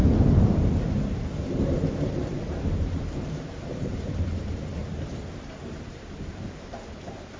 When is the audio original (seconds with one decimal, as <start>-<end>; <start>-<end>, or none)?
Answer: 3.9-4.8; 6.8-7.4